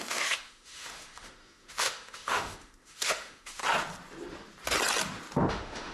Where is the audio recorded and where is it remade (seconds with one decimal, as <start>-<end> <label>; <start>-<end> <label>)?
0.0-3.6 remade; 3.6-5.5 recorded; 5.5-5.9 remade